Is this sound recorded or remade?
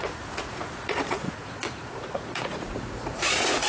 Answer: remade